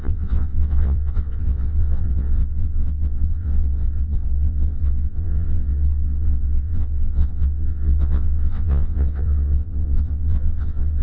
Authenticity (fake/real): fake